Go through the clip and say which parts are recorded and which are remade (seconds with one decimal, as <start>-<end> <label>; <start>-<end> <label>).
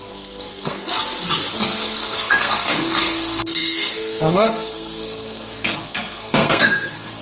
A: 0.0-0.9 remade; 0.9-1.5 recorded; 1.5-7.2 remade